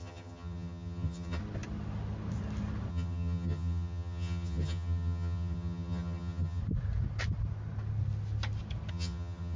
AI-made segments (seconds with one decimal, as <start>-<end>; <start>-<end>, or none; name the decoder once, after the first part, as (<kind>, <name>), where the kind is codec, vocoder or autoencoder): 0.0-1.4 (vocoder, HiFi-GAN); 2.9-6.6; 8.9-9.6